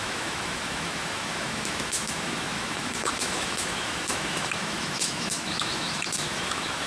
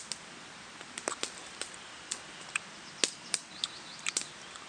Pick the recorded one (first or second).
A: second